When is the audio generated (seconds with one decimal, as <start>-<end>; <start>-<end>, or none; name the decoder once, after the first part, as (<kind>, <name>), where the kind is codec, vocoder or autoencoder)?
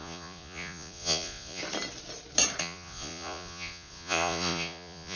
0.0-1.6 (vocoder, Vocos); 2.6-5.2